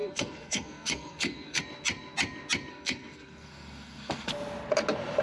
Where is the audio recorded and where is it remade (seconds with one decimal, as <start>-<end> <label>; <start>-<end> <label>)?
0.0-1.6 remade; 1.6-2.7 recorded; 2.7-4.3 remade; 4.3-5.2 recorded